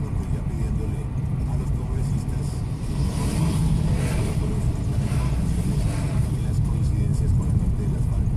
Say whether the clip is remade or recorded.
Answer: recorded